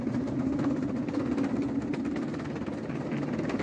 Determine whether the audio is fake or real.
real